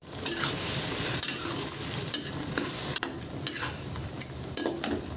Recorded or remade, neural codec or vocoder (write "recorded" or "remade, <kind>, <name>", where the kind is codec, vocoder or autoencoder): recorded